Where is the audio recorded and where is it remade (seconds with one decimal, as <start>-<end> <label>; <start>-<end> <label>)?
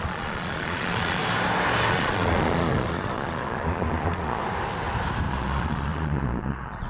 0.0-1.2 remade; 1.2-1.9 recorded; 1.9-4.4 remade; 4.4-5.3 recorded; 5.3-6.9 remade